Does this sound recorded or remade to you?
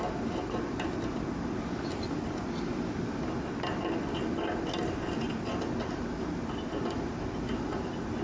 recorded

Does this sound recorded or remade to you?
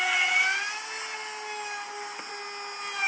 recorded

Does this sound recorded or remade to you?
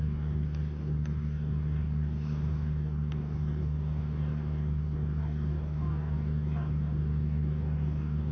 remade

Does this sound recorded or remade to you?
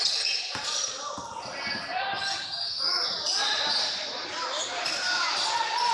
recorded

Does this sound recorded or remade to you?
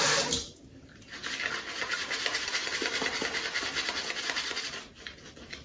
remade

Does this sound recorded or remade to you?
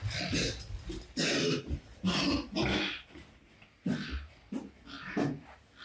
recorded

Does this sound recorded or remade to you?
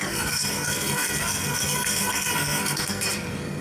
remade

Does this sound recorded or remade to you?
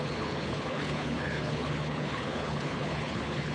remade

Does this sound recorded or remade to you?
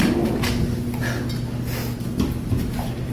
recorded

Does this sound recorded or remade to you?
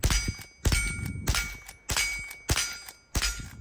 recorded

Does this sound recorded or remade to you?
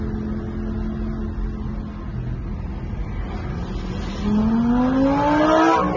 recorded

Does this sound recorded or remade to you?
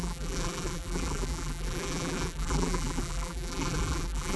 remade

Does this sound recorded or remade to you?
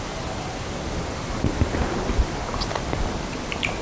recorded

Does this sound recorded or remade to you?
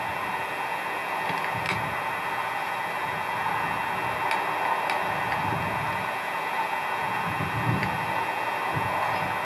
recorded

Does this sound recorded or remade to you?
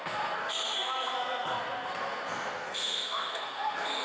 remade